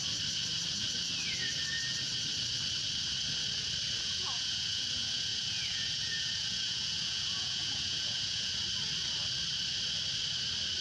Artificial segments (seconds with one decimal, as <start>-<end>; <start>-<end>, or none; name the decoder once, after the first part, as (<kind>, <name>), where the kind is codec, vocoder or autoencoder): 4.0-8.5 (vocoder, Vocos)